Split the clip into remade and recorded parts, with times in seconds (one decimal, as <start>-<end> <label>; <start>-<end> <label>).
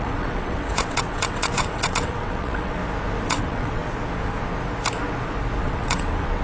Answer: 0.0-2.8 remade; 2.8-3.3 recorded; 3.3-3.8 remade; 3.8-5.6 recorded; 5.6-6.4 remade